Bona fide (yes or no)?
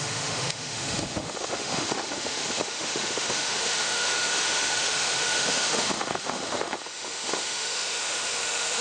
no